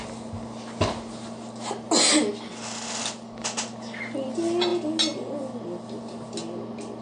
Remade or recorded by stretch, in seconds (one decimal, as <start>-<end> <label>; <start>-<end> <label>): 0.0-7.0 recorded